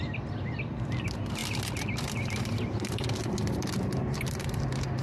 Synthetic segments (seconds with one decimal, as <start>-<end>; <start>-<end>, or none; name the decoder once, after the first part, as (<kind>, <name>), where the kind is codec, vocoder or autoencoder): 0.0-5.0 (vocoder, BigVGAN v2)